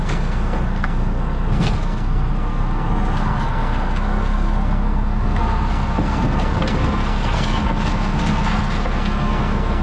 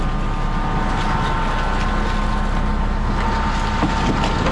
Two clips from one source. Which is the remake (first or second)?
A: first